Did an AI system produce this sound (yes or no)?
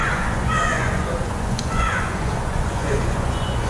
yes